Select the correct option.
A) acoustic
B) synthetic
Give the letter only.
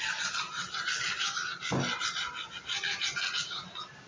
A